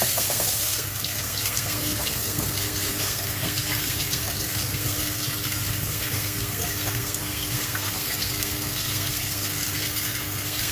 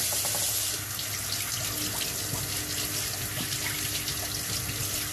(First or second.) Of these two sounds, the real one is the second